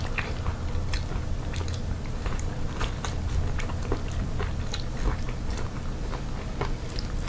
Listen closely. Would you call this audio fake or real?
real